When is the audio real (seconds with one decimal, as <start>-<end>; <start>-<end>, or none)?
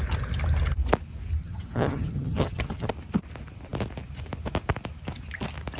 0.0-1.4; 2.9-5.8